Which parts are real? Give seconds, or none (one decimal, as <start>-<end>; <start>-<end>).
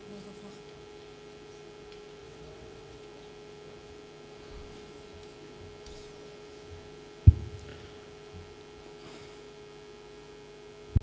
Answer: 0.0-2.2; 3.0-11.0